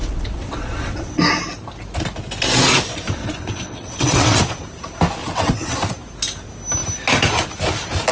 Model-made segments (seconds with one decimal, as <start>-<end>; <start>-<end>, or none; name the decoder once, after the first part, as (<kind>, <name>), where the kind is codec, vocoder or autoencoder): 0.0-1.2 (vocoder, WaveNeXt); 3.2-4.4; 5.2-5.8

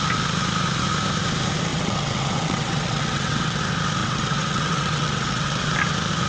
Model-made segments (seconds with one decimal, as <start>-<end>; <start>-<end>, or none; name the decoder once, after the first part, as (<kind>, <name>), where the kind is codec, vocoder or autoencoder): 1.7-3.6 (vocoder, WaveNeXt); 4.0-5.7

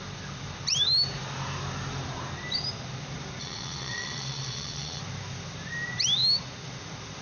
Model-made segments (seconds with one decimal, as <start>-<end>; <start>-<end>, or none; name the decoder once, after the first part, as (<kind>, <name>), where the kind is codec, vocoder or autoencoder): 3.4-5.0 (vocoder, WaveNeXt)

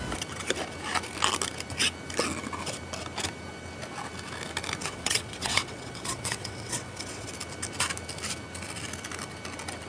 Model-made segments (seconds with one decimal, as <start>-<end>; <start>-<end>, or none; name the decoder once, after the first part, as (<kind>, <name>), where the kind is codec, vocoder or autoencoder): 4.8-7.3 (vocoder, WaveNeXt)